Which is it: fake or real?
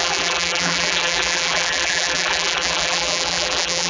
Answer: fake